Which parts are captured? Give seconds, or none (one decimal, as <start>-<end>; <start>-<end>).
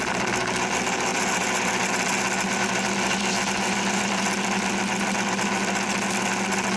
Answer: 0.0-6.8